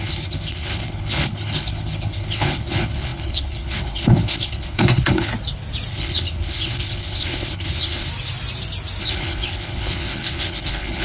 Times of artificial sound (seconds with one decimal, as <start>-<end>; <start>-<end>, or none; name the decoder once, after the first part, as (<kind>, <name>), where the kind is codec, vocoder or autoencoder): 0.0-5.3 (codec, HILCodec); 5.9-8.1; 9.0-11.0